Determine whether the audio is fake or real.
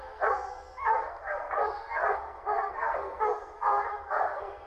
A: fake